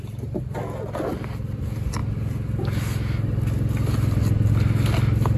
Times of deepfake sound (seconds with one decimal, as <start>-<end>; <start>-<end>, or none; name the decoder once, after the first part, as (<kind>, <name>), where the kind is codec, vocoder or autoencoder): none